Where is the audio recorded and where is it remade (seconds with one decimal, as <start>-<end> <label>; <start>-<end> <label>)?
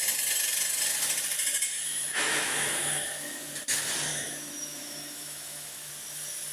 0.0-1.8 recorded; 1.8-3.5 remade; 3.5-4.1 recorded; 4.1-5.9 remade; 5.9-6.5 recorded